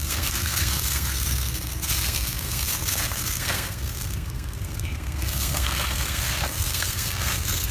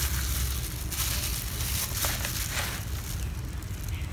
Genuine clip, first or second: second